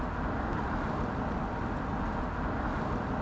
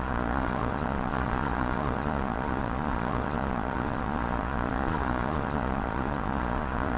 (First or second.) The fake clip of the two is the second